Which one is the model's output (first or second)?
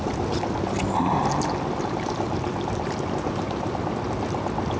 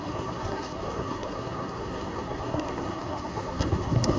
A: second